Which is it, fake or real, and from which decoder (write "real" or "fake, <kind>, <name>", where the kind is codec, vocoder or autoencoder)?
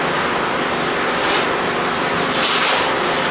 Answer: real